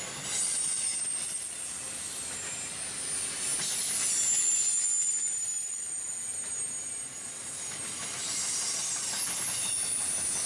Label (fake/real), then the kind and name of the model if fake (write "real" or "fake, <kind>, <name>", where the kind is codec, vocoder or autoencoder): real